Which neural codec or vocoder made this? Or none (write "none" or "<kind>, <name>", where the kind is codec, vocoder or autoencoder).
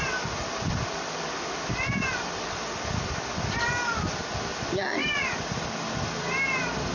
none